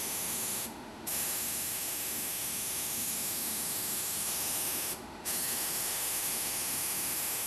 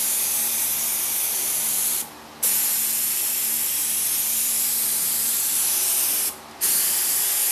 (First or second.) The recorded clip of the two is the second